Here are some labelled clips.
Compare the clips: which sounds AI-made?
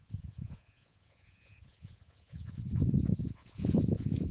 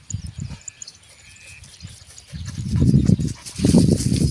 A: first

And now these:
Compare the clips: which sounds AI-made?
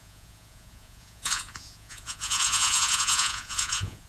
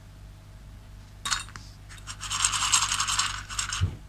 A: first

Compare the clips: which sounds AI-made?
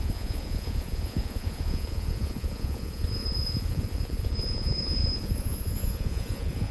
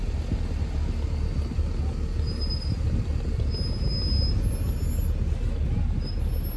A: first